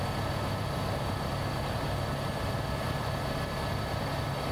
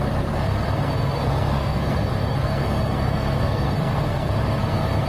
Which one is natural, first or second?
first